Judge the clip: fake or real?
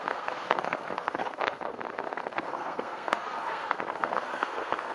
fake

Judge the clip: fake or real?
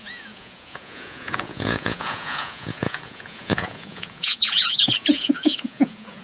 fake